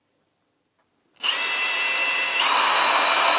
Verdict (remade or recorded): remade